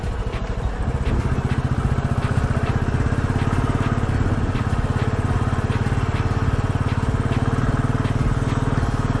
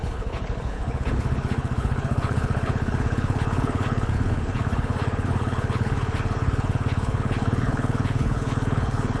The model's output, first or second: second